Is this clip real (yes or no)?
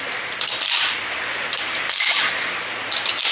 yes